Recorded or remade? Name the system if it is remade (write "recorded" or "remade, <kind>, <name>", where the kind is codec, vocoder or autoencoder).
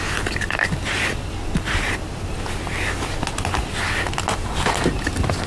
recorded